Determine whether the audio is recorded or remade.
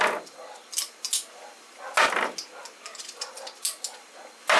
recorded